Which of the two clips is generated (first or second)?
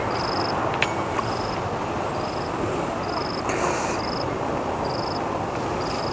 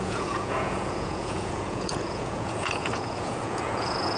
second